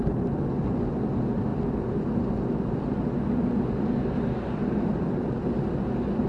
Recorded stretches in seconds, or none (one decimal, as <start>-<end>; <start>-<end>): 0.0-6.3